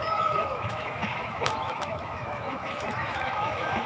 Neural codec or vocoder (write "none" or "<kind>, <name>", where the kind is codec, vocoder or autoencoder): autoencoder, DAC-VAE